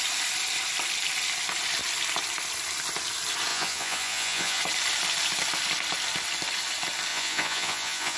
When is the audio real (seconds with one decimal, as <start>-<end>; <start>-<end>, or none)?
0.0-3.5; 4.6-7.1